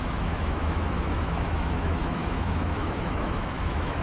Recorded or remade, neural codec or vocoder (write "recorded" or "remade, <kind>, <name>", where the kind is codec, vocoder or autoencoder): remade, autoencoder, DAC-VAE